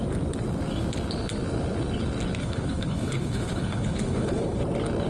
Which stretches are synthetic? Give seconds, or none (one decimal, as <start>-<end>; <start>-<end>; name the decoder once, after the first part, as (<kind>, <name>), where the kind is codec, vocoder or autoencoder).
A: 2.4-4.6 (codec, HILCodec)

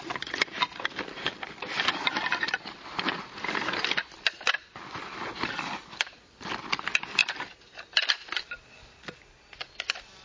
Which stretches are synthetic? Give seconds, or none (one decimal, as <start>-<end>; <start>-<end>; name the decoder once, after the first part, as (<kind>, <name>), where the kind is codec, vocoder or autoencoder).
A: none

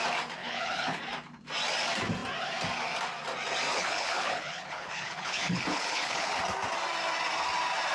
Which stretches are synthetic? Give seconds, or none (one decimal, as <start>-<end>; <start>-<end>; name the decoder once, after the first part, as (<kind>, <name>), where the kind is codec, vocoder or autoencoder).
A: 0.4-1.0 (codec, HILCodec); 3.7-6.4

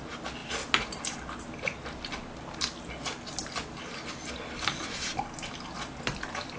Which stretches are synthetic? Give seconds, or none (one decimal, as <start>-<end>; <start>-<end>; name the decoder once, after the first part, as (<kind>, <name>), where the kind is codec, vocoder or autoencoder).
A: none

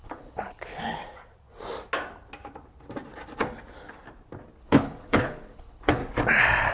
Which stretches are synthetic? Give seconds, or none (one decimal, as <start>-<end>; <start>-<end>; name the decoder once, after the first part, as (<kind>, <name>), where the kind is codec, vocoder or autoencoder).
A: 0.0-1.0 (codec, HILCodec); 4.6-6.0

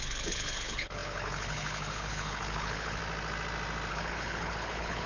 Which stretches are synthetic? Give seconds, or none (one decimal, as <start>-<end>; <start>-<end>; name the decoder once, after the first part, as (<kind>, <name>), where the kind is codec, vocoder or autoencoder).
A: 0.0-3.0 (codec, HILCodec); 3.9-5.1

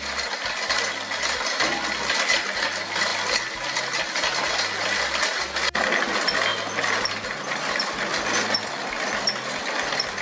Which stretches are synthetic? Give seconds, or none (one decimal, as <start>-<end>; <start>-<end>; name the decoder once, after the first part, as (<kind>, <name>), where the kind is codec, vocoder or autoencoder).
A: none

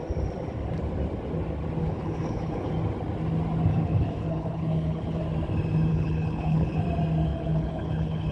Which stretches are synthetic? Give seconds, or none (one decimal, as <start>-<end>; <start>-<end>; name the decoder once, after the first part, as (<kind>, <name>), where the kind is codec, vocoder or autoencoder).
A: 1.8-2.7 (codec, HILCodec); 3.7-5.2; 5.9-6.8; 7.3-8.3